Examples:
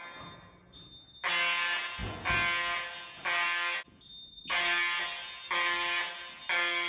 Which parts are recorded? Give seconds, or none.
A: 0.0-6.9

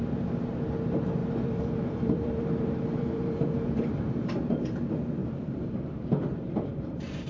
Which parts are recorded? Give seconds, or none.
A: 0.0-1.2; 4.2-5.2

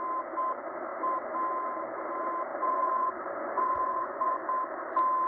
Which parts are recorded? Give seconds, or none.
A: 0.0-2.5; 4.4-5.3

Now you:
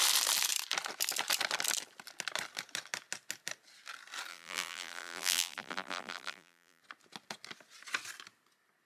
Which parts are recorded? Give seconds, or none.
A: 0.0-4.3; 6.8-8.9

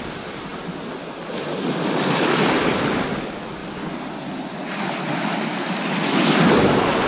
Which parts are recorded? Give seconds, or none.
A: 0.0-7.1

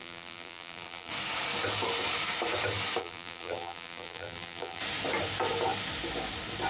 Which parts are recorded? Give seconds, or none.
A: 1.1-3.0; 4.8-6.7

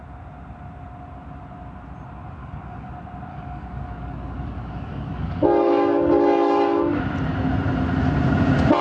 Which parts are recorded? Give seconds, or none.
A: 0.0-2.4; 2.9-3.3; 7.0-8.8

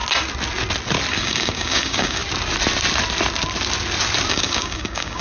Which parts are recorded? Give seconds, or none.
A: 0.0-1.1; 2.2-4.3